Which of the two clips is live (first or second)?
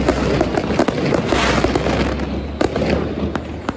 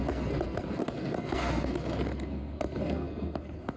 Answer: first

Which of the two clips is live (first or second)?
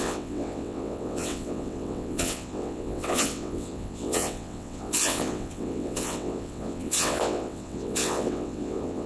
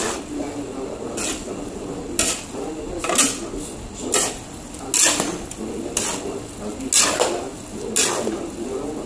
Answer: second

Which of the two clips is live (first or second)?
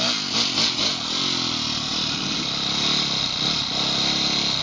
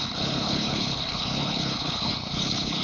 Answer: first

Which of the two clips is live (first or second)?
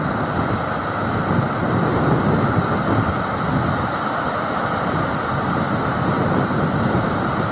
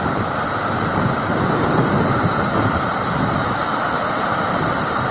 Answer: first